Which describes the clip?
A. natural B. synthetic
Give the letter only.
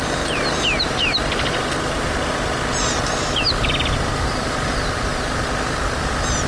A